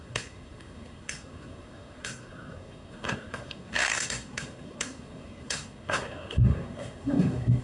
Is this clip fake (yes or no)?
yes